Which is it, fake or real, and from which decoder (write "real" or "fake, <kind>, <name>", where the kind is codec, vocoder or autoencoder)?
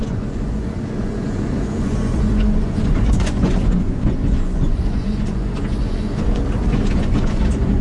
fake, vocoder, Vocos